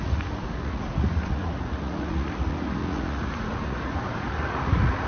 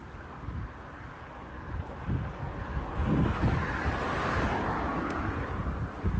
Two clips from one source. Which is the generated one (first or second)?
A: first